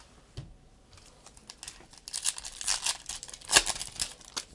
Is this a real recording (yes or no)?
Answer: yes